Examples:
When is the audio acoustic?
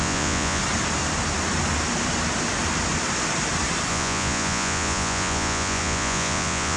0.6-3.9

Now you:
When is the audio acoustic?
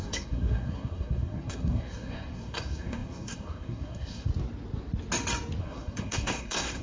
4.3-5.6